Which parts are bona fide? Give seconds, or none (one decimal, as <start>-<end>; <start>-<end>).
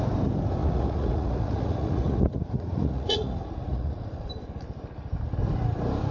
0.0-0.6; 4.3-6.1